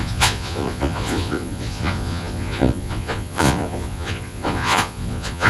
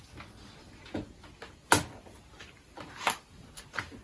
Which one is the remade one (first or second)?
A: first